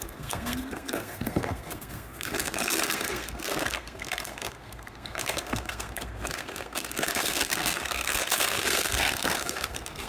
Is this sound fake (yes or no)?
yes